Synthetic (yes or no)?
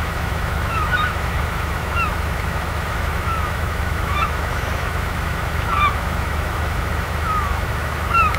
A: yes